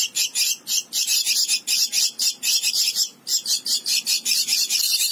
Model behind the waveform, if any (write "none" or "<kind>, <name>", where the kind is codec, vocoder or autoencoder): none